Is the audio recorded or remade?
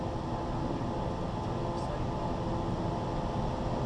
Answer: recorded